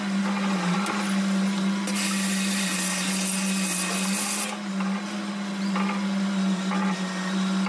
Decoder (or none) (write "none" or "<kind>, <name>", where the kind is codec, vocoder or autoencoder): none